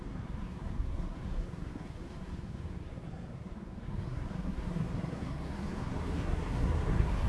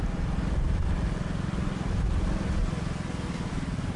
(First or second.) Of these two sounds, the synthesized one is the first